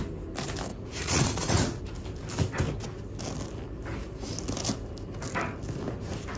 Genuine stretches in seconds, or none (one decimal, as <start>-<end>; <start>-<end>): 0.0-0.7; 1.8-6.4